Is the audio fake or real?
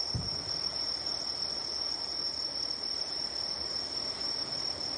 real